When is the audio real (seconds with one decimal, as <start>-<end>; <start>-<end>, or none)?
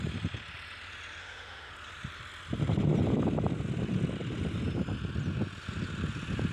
0.0-1.2; 1.7-6.5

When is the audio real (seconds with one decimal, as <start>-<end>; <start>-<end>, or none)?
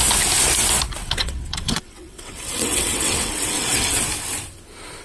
0.0-1.0; 4.0-5.0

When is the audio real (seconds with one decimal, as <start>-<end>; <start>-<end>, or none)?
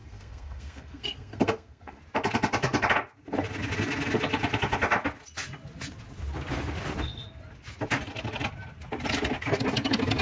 2.0-10.2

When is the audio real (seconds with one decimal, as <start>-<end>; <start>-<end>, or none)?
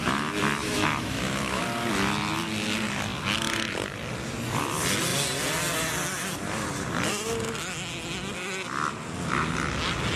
0.0-0.6; 1.6-10.2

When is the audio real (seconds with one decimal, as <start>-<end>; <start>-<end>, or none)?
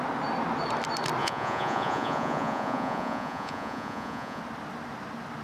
0.0-1.2; 4.4-5.4